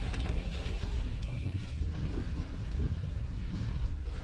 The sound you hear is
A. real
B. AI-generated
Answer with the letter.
B